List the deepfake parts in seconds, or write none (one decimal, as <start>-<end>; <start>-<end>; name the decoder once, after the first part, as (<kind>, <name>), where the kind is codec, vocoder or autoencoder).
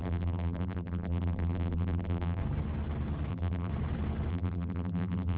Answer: 0.0-2.4 (vocoder, BigVGAN v2); 3.3-3.7; 4.3-5.4